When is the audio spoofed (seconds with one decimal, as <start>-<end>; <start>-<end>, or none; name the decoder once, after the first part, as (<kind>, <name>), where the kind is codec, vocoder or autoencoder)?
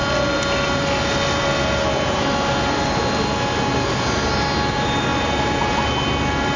none